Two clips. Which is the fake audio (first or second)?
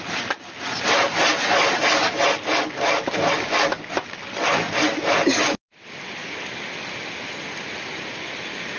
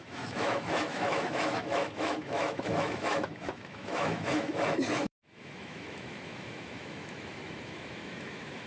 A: second